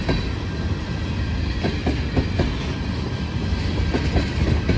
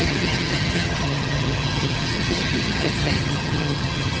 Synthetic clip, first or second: second